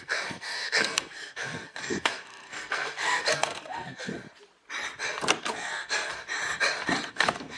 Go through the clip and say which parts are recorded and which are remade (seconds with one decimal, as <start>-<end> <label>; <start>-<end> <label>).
0.0-4.1 remade; 4.1-5.4 recorded; 5.4-6.1 remade; 6.1-7.1 recorded; 7.1-7.6 remade